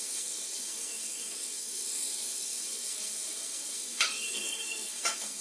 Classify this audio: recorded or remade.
remade